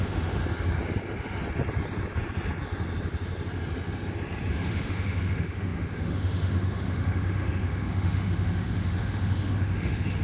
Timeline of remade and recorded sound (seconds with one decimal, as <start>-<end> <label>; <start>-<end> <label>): 0.0-0.4 remade; 0.4-4.5 recorded; 4.5-10.2 remade